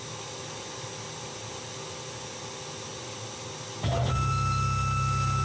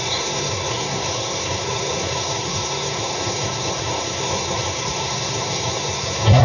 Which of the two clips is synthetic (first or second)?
second